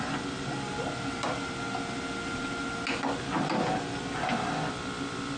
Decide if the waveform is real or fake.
real